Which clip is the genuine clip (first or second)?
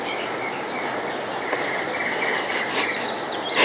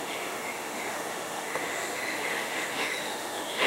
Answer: first